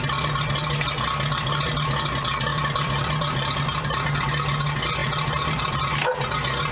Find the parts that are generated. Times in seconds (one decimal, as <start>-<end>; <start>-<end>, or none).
2.5-4.1; 5.0-5.7